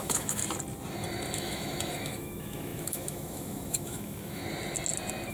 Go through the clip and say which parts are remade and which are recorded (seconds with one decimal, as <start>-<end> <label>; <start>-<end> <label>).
0.0-0.4 remade; 0.4-1.3 recorded; 1.3-4.4 remade; 4.4-5.3 recorded